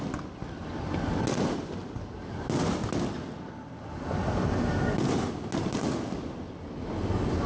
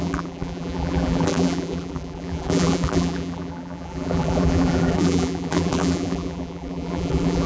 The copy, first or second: second